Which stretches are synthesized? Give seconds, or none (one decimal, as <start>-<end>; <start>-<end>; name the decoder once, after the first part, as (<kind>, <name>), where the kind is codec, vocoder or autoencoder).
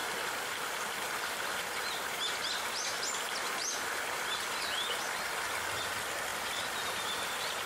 0.0-4.6 (vocoder, BigVGAN v2); 6.3-7.7